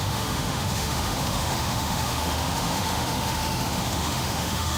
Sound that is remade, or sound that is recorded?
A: remade